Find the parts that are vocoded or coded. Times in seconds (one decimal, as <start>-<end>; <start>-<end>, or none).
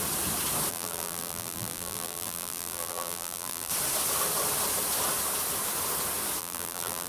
0.7-3.7; 6.4-7.1